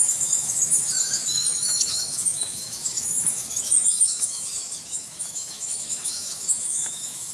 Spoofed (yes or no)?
yes